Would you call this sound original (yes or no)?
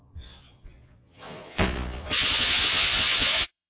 no